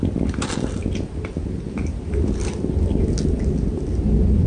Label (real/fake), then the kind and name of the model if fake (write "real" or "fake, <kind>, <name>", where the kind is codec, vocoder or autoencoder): real